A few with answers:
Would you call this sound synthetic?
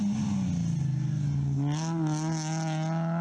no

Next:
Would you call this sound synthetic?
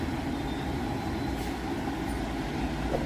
no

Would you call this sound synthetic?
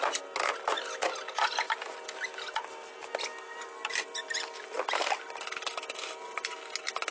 no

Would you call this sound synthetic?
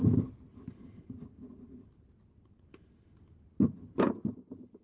no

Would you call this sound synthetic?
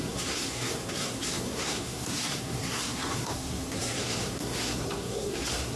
yes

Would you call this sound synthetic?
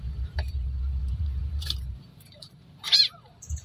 yes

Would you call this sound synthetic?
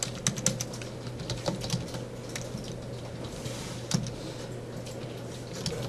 no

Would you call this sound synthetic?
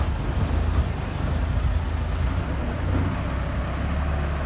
no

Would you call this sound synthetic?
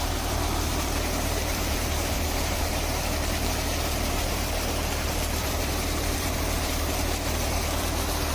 yes